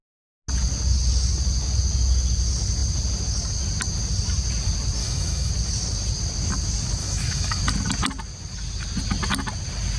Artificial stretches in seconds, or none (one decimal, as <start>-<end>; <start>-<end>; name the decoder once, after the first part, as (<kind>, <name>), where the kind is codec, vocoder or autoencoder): 5.0-5.5 (autoencoder, DAC-VAE); 7.0-7.6

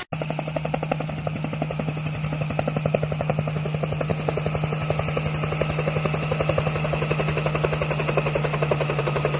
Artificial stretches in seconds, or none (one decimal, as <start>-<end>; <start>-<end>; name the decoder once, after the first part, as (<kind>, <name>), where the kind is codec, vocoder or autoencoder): none

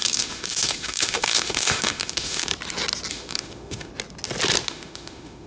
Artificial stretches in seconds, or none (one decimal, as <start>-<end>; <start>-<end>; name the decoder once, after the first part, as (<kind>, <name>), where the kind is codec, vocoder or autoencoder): 0.0-2.5 (autoencoder, DAC-VAE); 3.1-3.9; 4.7-5.5

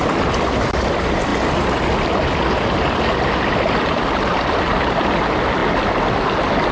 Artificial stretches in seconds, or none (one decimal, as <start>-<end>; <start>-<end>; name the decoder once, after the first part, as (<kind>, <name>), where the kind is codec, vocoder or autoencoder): none

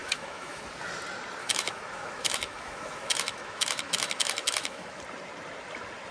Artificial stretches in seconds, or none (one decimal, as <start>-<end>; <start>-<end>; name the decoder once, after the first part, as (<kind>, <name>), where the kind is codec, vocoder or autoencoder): 0.0-0.6 (autoencoder, DAC-VAE); 1.4-5.0

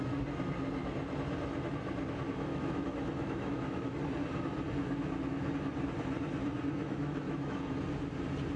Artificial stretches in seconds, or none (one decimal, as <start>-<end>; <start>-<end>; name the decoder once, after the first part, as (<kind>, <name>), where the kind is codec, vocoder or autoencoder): 2.5-4.0 (autoencoder, DAC-VAE); 4.8-5.5; 6.8-7.8

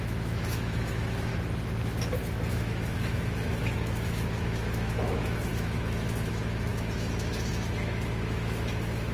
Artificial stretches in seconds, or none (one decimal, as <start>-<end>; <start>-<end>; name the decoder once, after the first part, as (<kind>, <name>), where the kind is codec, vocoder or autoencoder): 0.0-1.3 (autoencoder, DAC-VAE); 2.5-9.1